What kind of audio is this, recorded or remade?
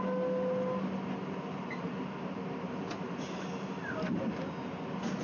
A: recorded